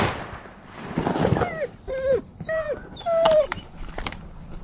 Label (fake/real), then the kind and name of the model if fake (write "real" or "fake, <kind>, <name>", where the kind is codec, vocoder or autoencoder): fake, vocoder, BigVGAN v2